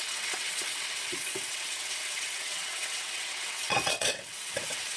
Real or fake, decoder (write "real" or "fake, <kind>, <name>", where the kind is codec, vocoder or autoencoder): fake, vocoder, WaveNeXt